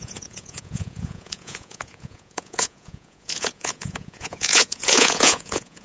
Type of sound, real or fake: fake